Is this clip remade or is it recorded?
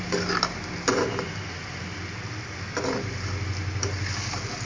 recorded